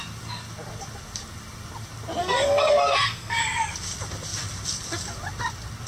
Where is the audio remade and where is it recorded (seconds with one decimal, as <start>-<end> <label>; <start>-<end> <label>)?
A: 0.0-2.2 recorded; 2.2-3.4 remade; 3.4-5.9 recorded